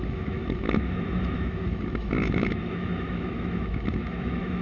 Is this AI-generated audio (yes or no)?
yes